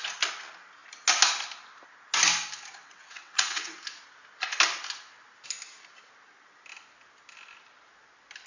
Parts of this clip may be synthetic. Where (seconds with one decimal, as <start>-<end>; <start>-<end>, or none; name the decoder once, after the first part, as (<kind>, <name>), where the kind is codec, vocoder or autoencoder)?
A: 2.8-3.8 (vocoder, WaveNeXt)